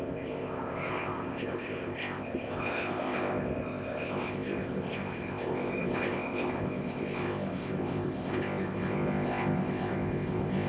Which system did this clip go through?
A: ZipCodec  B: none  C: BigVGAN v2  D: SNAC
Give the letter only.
A